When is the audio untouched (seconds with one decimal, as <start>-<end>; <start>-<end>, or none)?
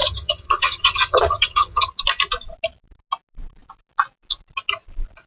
1.9-5.3